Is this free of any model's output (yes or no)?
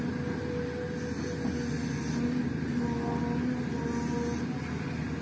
yes